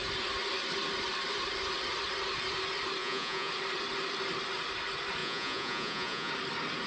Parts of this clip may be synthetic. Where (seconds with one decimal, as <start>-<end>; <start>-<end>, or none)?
3.0-3.5; 5.2-6.3